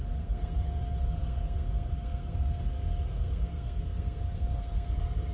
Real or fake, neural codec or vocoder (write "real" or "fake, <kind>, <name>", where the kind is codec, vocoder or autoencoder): fake, codec, SNAC